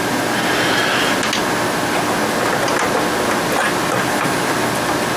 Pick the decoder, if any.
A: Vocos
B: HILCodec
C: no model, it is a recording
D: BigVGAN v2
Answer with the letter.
C